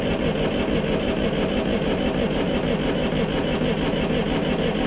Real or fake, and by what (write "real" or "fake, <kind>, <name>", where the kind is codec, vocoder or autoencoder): real